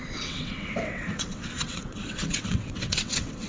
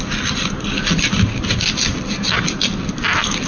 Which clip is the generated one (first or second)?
first